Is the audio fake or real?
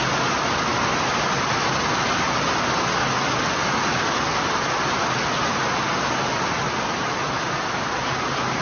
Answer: real